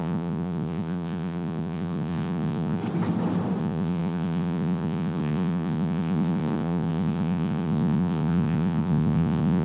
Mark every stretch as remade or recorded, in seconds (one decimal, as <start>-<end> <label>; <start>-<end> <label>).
0.0-2.8 remade; 2.8-3.6 recorded; 3.6-9.6 remade

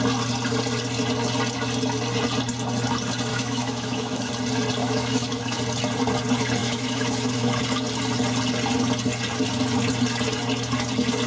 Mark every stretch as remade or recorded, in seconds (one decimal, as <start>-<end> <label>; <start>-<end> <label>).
0.0-3.3 recorded; 3.3-4.3 remade; 4.3-4.8 recorded; 4.8-5.6 remade; 5.6-6.6 recorded; 6.6-7.6 remade; 7.6-11.3 recorded

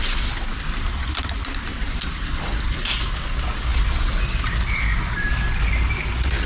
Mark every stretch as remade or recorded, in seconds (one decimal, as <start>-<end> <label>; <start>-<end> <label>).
0.0-6.5 recorded

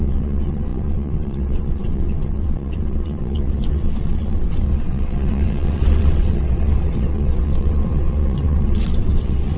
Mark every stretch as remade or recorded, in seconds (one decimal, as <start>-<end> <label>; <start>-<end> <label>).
0.0-9.6 remade